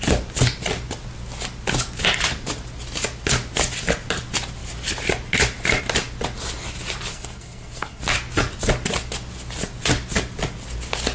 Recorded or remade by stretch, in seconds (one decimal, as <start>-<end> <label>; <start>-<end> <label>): 0.0-7.1 recorded; 7.1-8.0 remade; 8.0-11.1 recorded